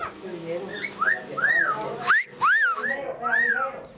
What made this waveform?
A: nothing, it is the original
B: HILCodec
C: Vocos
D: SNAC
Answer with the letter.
A